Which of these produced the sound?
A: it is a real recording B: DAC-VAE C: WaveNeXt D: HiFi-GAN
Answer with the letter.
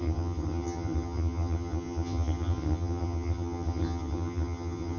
D